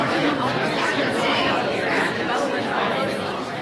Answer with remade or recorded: remade